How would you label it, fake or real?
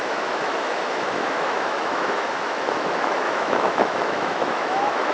fake